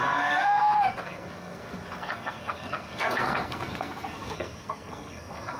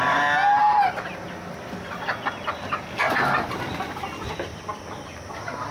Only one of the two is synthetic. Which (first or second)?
first